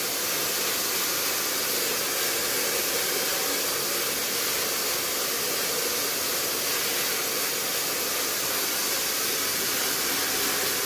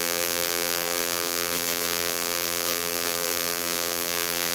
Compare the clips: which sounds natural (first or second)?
first